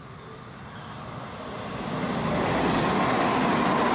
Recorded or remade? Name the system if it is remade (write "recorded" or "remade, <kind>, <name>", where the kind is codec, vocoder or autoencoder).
recorded